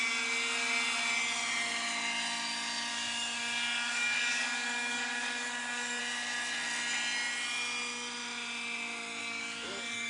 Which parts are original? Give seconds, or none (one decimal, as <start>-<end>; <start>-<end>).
0.0-2.9; 6.0-9.2